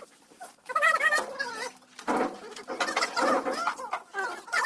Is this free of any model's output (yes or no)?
yes